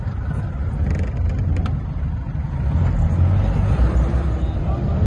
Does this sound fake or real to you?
real